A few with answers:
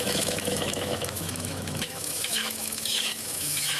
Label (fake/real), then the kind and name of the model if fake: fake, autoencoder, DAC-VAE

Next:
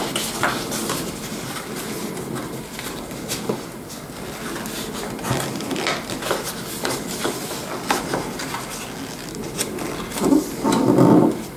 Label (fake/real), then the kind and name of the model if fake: real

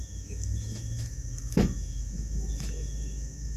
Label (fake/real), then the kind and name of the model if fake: fake, autoencoder, DAC-VAE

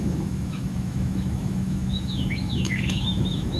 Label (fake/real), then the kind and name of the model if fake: fake, autoencoder, DAC-VAE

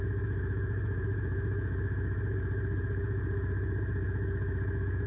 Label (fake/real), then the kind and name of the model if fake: fake, autoencoder, DAC-VAE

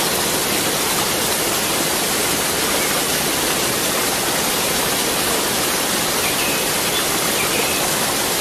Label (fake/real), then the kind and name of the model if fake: real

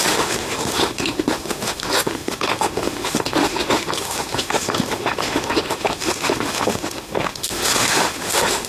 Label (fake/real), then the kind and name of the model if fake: fake, autoencoder, DAC-VAE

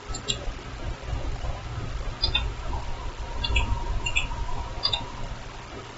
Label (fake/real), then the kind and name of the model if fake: real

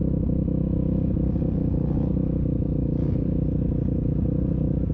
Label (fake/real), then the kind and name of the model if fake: real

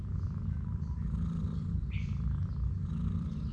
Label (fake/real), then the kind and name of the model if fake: real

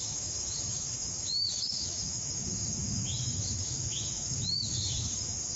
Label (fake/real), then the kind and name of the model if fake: fake, autoencoder, DAC-VAE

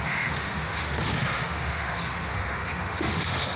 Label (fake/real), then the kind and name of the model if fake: fake, autoencoder, DAC-VAE